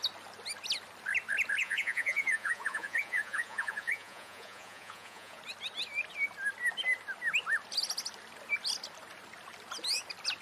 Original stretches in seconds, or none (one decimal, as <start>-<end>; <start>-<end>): 0.0-1.6; 5.4-10.4